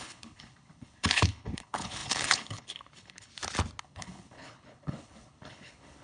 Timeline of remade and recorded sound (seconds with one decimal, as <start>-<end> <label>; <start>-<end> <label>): 0.0-3.3 remade; 3.3-3.8 recorded; 3.8-6.0 remade